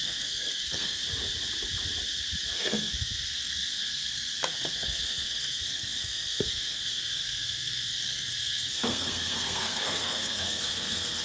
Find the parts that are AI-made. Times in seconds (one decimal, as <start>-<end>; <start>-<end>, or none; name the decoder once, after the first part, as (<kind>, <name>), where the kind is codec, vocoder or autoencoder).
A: 0.0-1.0 (codec, SNAC); 2.5-11.2